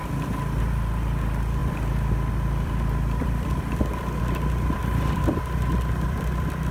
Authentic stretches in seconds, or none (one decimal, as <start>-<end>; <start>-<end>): 0.0-1.6; 4.2-4.8